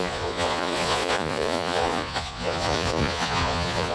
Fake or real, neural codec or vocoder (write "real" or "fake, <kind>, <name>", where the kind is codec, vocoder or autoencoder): fake, vocoder, Vocos